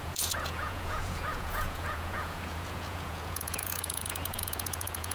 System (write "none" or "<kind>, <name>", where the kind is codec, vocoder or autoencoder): vocoder, Vocos